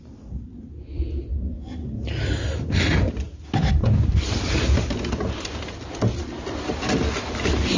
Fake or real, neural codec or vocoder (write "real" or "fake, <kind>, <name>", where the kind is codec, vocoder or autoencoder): real